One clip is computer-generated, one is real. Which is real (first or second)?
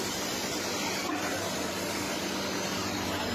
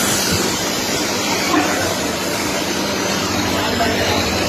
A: first